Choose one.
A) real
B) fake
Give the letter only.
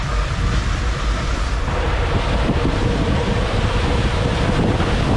A